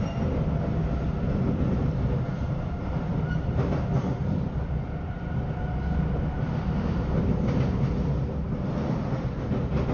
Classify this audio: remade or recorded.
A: recorded